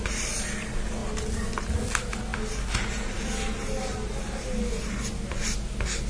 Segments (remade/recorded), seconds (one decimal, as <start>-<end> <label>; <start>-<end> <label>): 0.0-6.1 recorded